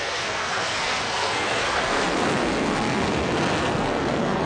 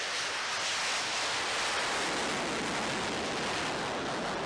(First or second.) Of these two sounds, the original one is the second